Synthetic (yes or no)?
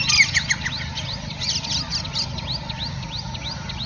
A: no